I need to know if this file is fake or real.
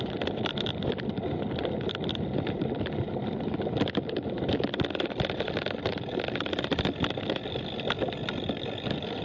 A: real